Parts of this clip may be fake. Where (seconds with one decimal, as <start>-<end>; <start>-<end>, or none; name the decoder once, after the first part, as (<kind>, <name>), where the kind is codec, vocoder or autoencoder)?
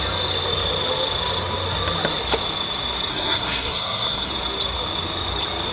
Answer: 3.1-4.3 (codec, SNAC)